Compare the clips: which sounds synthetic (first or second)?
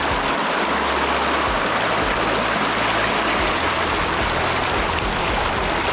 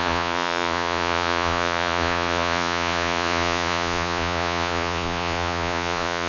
second